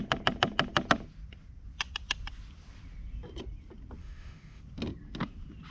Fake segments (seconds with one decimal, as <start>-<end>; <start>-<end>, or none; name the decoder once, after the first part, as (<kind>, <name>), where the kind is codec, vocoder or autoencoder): 4.0-4.6 (autoencoder, DAC-VAE)